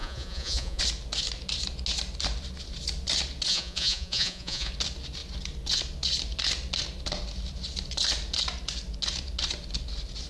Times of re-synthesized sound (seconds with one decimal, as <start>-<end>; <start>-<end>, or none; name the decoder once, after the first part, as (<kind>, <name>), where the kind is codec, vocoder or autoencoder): 0.0-0.8 (vocoder, Vocos); 3.5-4.7